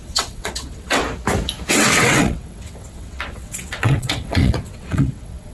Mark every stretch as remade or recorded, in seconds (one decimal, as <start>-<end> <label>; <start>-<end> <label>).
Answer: 0.0-1.0 remade; 1.0-1.7 recorded; 1.7-5.5 remade